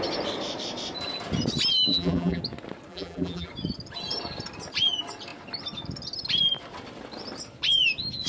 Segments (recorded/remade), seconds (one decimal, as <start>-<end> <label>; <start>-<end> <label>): 0.0-1.9 recorded; 1.9-2.4 remade; 2.4-2.9 recorded; 2.9-3.5 remade; 3.5-8.3 recorded